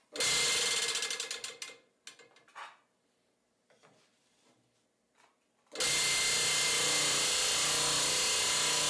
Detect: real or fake real